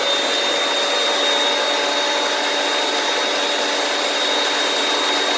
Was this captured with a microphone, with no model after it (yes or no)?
yes